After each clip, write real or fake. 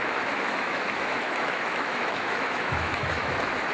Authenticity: fake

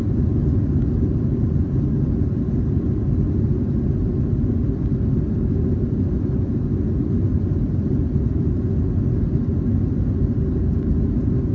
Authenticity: real